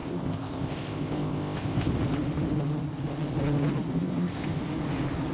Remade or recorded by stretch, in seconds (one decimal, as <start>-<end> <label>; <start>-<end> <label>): 0.0-1.9 remade; 1.9-3.9 recorded; 3.9-4.6 remade; 4.6-5.3 recorded